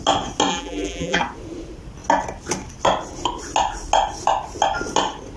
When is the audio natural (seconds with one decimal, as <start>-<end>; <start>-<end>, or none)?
0.0-0.5; 1.2-5.4